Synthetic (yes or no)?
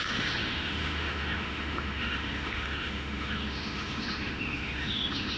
yes